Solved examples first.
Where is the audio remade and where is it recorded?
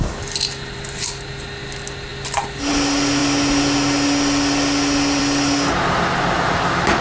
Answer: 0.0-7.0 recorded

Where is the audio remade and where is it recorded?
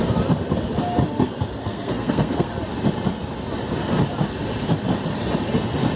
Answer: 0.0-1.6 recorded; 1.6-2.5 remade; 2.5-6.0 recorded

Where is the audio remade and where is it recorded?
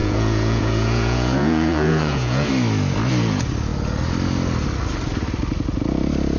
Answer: 0.0-2.5 remade; 2.5-6.4 recorded